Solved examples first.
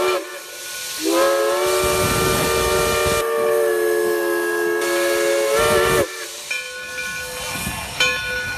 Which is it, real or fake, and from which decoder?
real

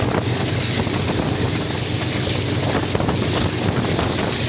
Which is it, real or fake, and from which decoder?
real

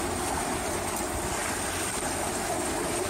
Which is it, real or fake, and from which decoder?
real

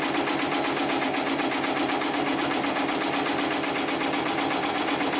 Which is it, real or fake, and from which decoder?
fake, vocoder, BigVGAN v2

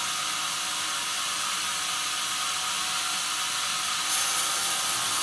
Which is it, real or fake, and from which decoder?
real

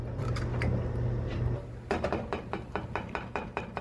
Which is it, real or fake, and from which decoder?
fake, vocoder, BigVGAN v2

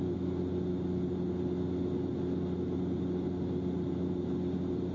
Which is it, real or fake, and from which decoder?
real